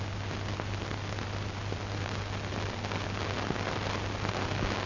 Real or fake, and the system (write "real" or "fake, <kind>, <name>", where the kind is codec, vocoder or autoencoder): real